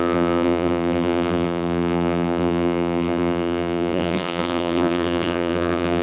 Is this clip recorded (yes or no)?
no